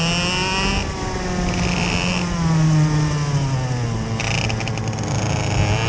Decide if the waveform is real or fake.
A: real